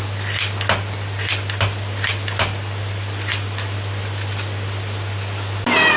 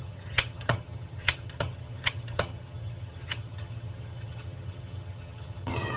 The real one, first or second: first